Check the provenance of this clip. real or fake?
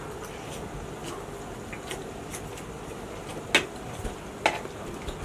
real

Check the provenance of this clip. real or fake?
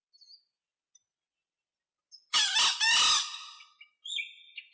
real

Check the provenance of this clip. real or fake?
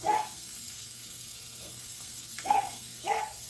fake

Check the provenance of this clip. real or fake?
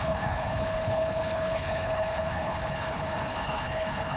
fake